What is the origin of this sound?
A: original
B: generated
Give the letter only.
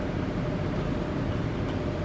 A